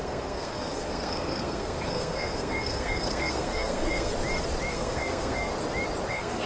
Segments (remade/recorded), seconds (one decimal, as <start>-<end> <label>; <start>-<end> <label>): 0.0-4.1 remade; 4.1-4.7 recorded; 4.7-5.5 remade; 5.5-6.1 recorded; 6.1-6.5 remade